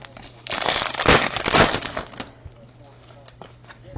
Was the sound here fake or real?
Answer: real